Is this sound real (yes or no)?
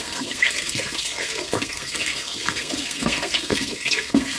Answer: no